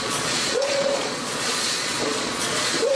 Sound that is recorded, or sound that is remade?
remade